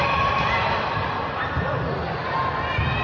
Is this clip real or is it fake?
real